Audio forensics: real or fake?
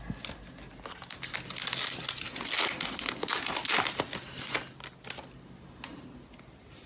real